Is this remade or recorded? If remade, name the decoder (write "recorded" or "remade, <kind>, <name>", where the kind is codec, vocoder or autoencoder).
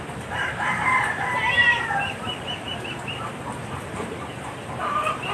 remade, vocoder, BigVGAN v2